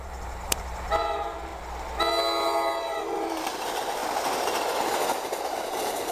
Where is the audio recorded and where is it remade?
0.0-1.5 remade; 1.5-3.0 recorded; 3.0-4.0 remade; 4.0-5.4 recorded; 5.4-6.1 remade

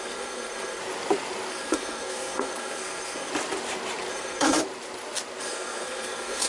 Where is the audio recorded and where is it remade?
0.0-0.8 remade; 0.8-1.5 recorded; 1.5-3.3 remade; 3.3-4.1 recorded; 4.1-4.6 remade; 4.6-5.4 recorded; 5.4-6.5 remade

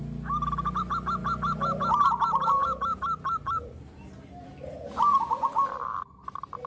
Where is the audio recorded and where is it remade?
0.0-2.6 recorded; 2.6-6.0 remade; 6.0-6.7 recorded

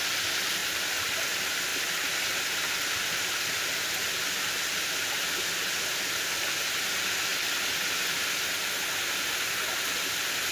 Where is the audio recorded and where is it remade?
0.0-0.6 recorded; 0.6-1.1 remade; 1.1-10.5 recorded

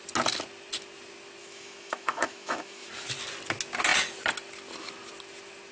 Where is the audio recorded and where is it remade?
0.0-1.4 recorded; 1.4-2.9 remade; 2.9-5.7 recorded

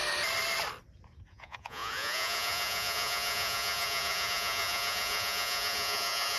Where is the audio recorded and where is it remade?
0.0-1.3 recorded; 1.3-6.4 remade

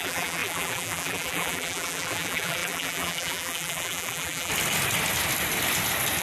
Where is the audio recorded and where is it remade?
0.0-4.5 remade; 4.5-6.2 recorded

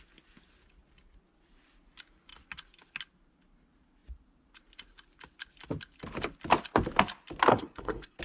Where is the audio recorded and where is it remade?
0.0-7.5 recorded; 7.5-8.2 remade